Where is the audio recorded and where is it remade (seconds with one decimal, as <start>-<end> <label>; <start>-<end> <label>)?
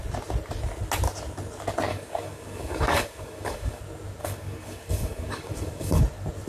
0.0-1.9 recorded; 1.9-3.8 remade; 3.8-4.2 recorded; 4.2-6.0 remade; 6.0-6.5 recorded